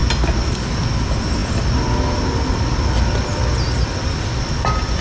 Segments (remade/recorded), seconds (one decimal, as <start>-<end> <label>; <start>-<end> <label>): 0.0-5.0 recorded